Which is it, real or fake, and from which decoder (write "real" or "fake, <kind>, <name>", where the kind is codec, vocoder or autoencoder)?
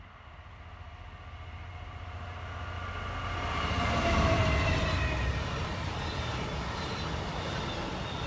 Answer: real